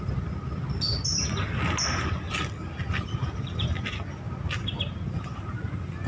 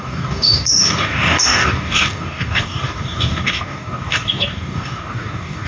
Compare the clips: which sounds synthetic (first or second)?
second